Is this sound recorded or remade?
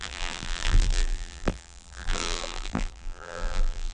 remade